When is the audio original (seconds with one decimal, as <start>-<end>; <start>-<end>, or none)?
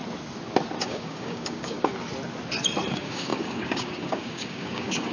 0.0-0.8; 1.9-2.9